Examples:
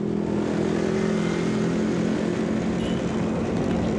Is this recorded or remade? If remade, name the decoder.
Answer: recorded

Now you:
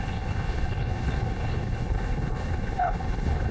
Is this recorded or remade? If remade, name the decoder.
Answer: remade, codec, HILCodec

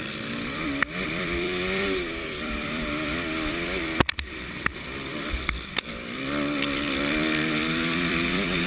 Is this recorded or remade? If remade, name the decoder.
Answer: remade, vocoder, BigVGAN v2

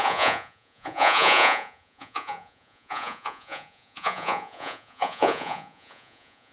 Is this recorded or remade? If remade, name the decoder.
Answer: remade, vocoder, Vocos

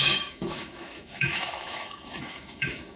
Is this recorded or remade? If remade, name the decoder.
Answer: remade, autoencoder, DAC-VAE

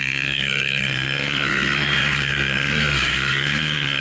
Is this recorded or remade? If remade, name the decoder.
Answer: remade, codec, SNAC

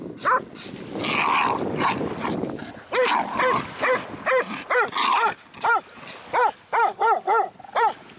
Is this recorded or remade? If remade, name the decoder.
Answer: recorded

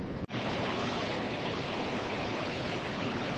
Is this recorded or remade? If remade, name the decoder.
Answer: remade, codec, HILCodec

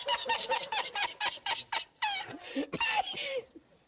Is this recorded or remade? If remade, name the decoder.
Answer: remade, vocoder, BigVGAN v2